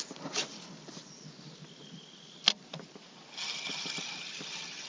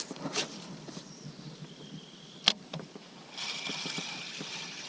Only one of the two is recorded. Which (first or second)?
first